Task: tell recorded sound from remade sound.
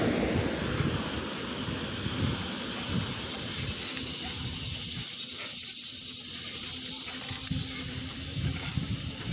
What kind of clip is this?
recorded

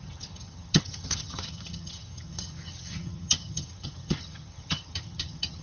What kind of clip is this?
remade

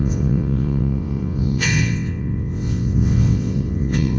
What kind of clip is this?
remade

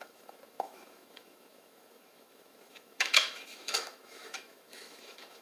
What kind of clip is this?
remade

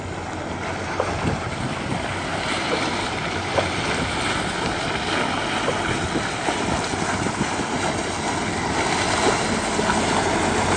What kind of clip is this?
recorded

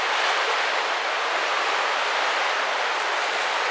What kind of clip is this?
recorded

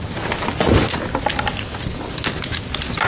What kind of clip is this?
recorded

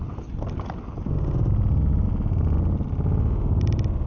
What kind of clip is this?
recorded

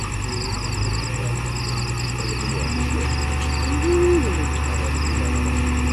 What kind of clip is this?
recorded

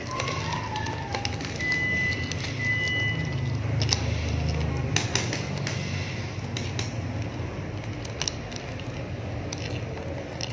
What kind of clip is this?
recorded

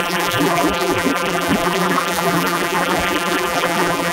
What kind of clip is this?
remade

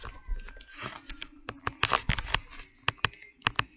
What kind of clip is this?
recorded